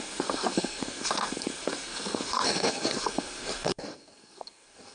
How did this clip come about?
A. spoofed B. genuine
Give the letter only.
A